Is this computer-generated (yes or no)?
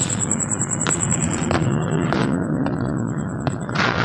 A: yes